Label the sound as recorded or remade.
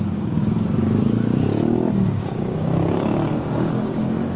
remade